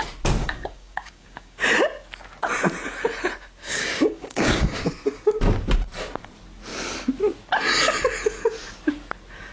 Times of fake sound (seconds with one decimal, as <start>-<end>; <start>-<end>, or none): 0.4-1.6; 3.7-4.8